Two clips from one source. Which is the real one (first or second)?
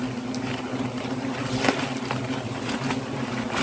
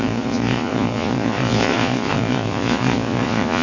first